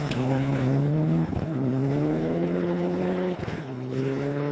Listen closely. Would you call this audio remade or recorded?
remade